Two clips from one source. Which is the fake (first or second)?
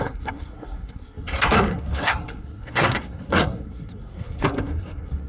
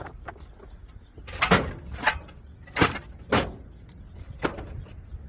first